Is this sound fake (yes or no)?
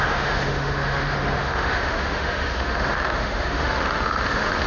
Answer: yes